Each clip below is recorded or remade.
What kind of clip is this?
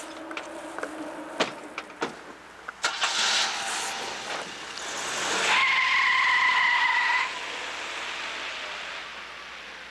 recorded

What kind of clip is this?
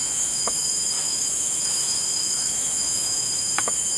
remade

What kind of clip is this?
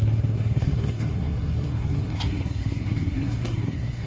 remade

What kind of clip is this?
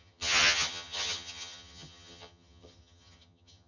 remade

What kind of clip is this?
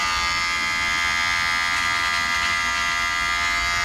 recorded